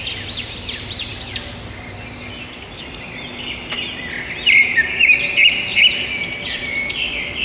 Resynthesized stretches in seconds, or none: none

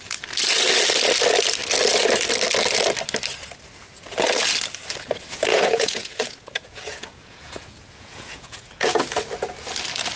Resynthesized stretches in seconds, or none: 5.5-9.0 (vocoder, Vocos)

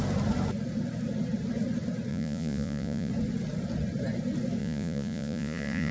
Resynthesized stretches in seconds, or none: 2.1-3.1 (vocoder, Vocos); 4.6-5.9

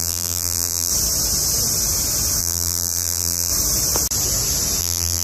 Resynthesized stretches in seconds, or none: 0.0-0.9 (vocoder, BigVGAN v2); 2.4-3.5; 4.8-5.2